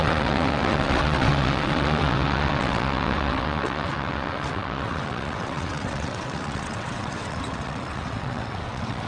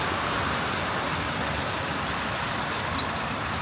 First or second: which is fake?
first